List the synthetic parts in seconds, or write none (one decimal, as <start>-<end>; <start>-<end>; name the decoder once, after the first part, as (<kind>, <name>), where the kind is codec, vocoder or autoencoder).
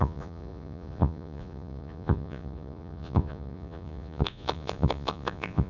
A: 0.0-5.7 (vocoder, Vocos)